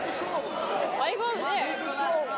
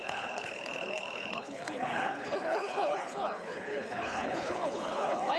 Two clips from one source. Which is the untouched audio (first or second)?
first